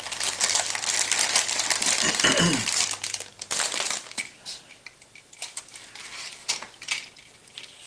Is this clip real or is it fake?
real